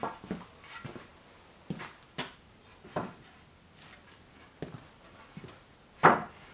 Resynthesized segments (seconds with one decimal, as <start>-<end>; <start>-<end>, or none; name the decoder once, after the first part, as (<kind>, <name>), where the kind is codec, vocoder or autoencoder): none